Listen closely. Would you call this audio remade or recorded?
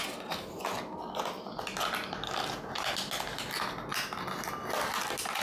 recorded